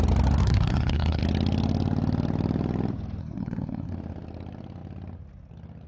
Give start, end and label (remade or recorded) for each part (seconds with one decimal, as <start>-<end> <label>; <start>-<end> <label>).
0.0-0.4 recorded; 0.4-1.2 remade; 1.2-3.2 recorded; 3.2-3.9 remade; 3.9-5.9 recorded